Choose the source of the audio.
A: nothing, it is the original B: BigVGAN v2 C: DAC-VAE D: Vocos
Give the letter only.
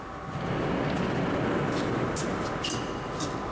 A